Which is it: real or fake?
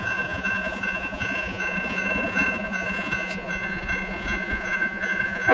fake